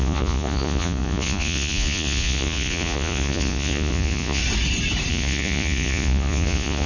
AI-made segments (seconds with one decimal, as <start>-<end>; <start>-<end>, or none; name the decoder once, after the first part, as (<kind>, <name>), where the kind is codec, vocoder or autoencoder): 0.0-4.4 (vocoder, Vocos); 5.1-6.9